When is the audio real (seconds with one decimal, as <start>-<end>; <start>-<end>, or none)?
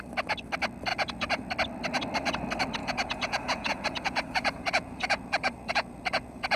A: 0.0-0.9; 1.5-2.8